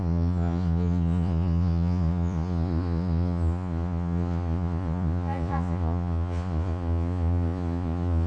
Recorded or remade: remade